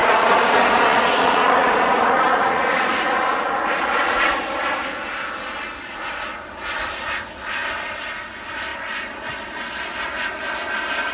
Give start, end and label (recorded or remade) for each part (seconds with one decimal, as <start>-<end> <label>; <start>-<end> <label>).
0.0-4.3 remade; 4.3-11.1 recorded